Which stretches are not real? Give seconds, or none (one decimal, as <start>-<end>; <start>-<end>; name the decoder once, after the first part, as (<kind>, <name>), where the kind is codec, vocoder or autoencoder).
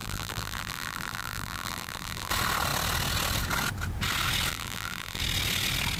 0.0-2.3 (vocoder, BigVGAN v2); 4.5-5.2